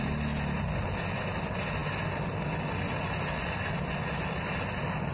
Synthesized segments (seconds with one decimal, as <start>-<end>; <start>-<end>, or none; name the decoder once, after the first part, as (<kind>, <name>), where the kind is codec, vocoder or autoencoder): none

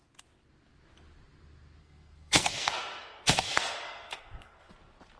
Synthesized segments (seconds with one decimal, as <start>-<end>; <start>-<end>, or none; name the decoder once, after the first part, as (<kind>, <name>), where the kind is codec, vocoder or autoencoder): 1.8-4.7 (codec, SNAC)

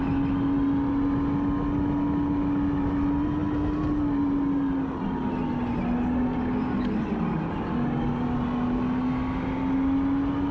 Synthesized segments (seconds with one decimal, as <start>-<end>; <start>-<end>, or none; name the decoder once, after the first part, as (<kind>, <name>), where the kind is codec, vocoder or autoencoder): none

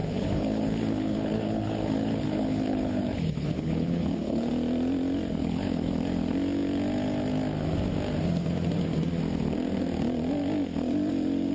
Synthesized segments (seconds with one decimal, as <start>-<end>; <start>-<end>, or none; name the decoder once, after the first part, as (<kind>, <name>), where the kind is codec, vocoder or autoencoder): 0.0-4.5 (codec, HILCodec); 5.4-5.9

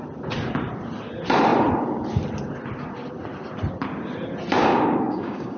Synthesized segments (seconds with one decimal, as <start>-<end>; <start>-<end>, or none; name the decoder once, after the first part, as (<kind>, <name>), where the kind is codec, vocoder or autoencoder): 4.6-5.6 (codec, DAC)

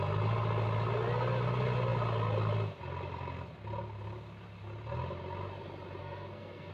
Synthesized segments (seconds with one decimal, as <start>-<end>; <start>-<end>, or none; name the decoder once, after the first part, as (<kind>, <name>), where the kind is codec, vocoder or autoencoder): 6.0-6.7 (codec, SNAC)